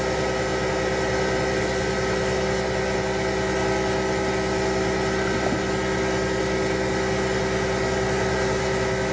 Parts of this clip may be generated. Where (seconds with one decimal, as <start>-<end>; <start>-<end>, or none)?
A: none